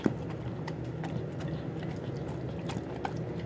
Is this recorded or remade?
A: recorded